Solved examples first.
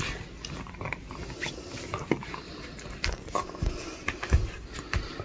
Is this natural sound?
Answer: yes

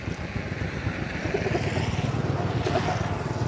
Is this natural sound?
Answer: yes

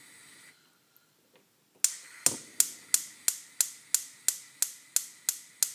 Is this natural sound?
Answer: yes